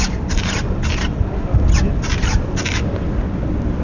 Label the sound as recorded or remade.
recorded